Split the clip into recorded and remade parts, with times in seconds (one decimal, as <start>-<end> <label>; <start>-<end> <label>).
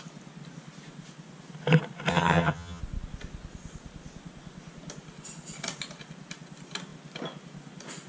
0.0-2.1 recorded; 2.1-2.8 remade; 2.8-8.1 recorded